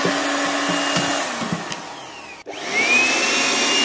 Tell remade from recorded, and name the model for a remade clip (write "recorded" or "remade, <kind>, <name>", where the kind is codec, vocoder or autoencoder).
recorded